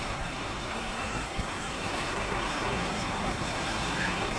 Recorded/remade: remade